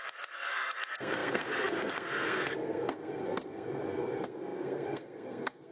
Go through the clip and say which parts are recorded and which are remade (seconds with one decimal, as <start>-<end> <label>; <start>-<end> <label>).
0.0-5.7 remade